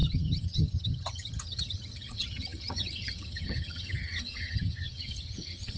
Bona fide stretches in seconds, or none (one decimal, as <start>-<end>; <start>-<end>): none